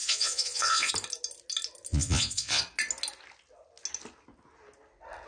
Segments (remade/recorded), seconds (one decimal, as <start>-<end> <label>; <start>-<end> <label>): 0.0-0.9 remade; 0.9-1.9 recorded; 1.9-2.6 remade; 2.6-5.3 recorded